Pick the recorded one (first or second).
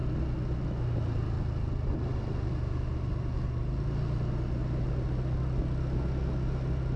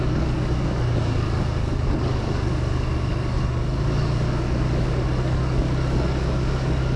first